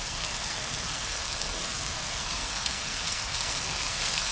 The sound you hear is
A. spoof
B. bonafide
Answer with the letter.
A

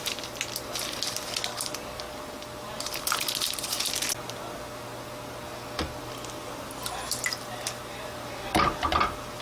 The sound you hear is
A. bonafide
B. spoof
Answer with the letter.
A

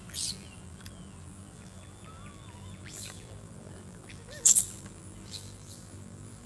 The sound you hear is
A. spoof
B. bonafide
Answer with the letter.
A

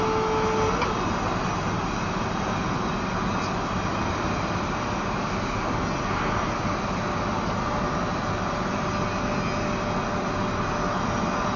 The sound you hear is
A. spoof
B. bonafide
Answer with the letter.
B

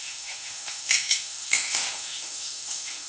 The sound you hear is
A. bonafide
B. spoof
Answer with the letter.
B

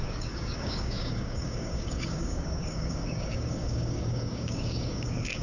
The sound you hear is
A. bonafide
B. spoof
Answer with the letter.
B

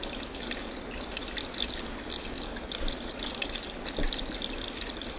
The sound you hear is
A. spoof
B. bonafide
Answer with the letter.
B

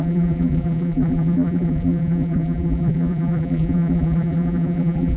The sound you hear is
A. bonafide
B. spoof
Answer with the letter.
B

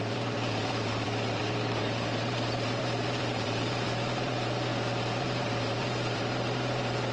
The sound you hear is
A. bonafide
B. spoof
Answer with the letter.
B